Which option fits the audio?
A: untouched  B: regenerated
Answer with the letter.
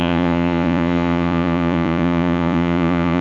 B